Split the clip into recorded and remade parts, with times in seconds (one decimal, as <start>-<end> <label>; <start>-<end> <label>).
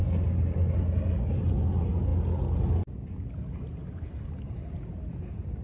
0.0-5.6 recorded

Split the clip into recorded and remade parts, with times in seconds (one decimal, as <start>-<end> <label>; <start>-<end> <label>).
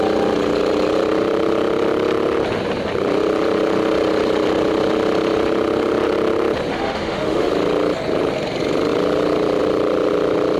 0.0-6.7 recorded; 6.7-7.5 remade; 7.5-10.6 recorded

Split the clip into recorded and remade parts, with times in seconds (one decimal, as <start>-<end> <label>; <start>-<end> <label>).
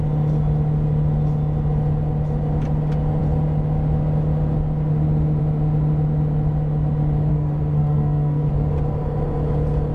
0.0-7.3 recorded; 7.3-8.5 remade; 8.5-9.9 recorded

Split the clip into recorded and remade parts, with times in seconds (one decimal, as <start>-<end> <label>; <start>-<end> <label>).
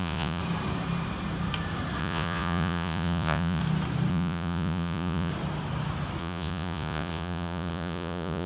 0.0-0.4 remade; 0.4-2.0 recorded; 2.0-3.6 remade; 3.6-4.1 recorded; 4.1-5.3 remade; 5.3-6.2 recorded; 6.2-8.5 remade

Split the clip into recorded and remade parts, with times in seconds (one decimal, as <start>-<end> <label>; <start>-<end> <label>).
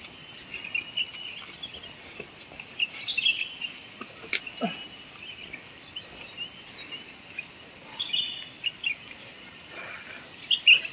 0.0-10.9 recorded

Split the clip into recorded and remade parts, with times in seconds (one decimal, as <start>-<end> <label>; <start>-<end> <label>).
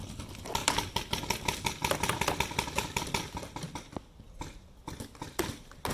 0.0-5.9 recorded